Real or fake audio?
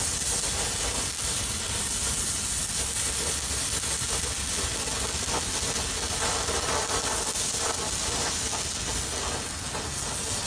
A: real